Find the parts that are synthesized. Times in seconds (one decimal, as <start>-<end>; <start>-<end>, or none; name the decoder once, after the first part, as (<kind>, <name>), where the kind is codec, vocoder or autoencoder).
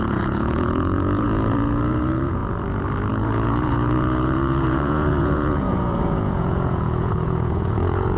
0.0-2.4 (vocoder, Vocos); 3.1-8.2